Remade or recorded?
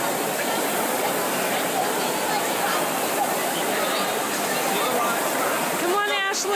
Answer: recorded